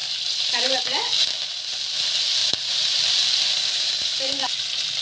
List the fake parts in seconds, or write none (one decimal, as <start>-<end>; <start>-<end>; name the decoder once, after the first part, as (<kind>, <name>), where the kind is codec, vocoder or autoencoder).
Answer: 0.0-0.8 (vocoder, BigVGAN v2); 2.4-5.0